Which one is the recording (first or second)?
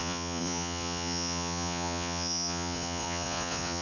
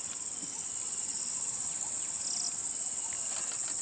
second